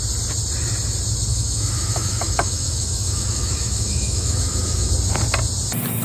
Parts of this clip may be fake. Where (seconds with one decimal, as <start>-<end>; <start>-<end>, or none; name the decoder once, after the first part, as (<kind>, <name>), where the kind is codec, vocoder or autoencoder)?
1.3-4.9 (autoencoder, DAC-VAE)